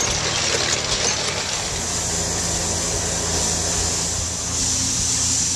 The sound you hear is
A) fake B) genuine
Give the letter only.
B